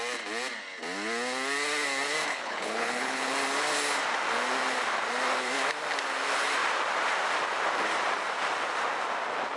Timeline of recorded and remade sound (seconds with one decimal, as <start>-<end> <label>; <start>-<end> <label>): 0.0-2.3 recorded; 2.3-3.3 remade; 3.3-9.6 recorded